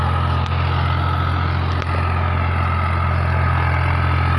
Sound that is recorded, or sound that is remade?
recorded